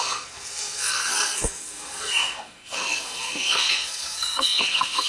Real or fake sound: fake